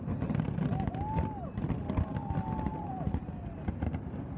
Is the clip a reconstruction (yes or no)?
no